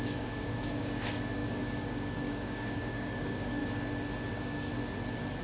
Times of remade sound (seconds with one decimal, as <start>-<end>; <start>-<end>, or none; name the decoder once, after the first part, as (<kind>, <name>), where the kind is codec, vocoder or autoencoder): 0.0-3.6 (codec, DAC); 4.3-4.7